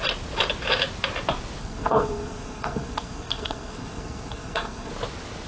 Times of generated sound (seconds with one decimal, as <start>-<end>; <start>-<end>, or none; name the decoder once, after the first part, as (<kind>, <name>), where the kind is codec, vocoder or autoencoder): 1.6-4.9 (codec, SNAC)